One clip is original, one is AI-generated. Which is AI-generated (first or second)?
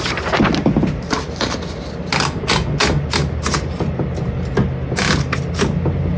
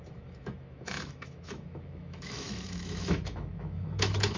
second